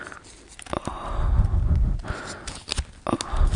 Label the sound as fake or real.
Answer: real